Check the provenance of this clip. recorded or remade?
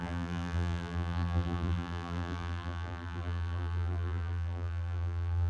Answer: remade